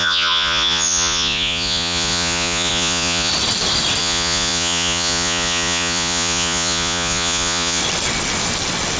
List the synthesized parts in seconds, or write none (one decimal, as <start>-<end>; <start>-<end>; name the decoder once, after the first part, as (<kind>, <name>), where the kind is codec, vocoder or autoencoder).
0.0-3.3 (vocoder, Vocos); 4.0-7.8